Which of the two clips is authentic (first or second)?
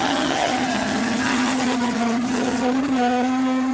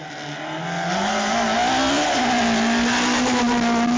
second